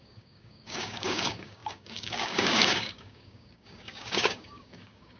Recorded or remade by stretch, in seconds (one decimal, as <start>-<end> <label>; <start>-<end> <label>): 0.0-5.2 remade